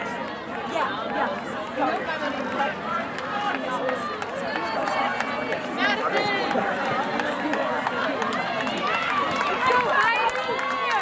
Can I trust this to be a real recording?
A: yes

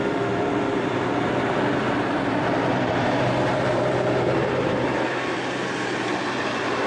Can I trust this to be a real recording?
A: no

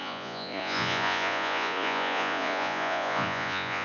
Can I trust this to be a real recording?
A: no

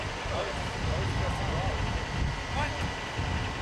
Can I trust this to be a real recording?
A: yes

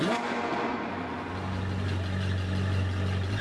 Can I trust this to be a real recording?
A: yes